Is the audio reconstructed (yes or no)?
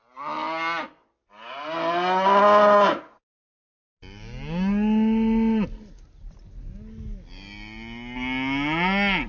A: no